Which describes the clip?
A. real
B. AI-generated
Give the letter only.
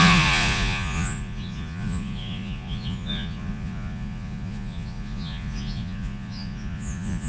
B